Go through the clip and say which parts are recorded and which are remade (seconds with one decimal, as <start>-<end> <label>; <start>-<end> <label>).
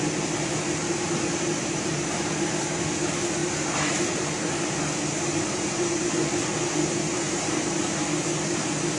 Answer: 0.0-0.8 recorded; 0.8-2.8 remade; 2.8-3.4 recorded; 3.4-7.8 remade; 7.8-9.0 recorded